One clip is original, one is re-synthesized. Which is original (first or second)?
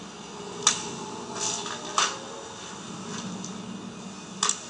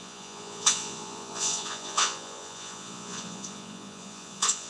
first